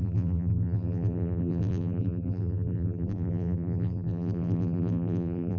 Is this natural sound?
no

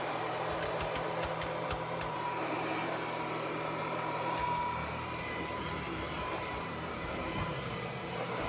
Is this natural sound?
no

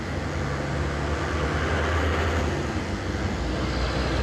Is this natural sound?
yes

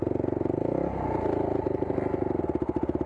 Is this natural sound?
yes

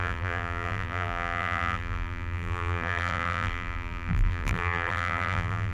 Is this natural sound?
no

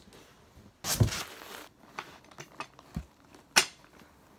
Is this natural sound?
yes